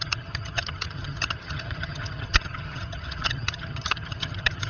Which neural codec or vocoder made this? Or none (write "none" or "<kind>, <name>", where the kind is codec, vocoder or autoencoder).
vocoder, HiFi-GAN